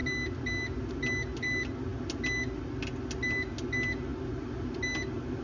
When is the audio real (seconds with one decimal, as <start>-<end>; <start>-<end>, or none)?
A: 0.0-4.1; 4.8-5.4